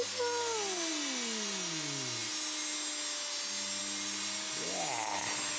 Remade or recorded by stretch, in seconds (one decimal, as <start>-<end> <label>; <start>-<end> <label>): 0.0-5.6 recorded